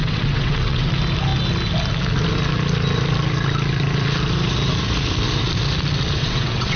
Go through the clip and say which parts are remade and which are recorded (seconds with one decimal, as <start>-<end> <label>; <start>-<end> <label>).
0.0-0.9 remade; 0.9-6.2 recorded; 6.2-6.8 remade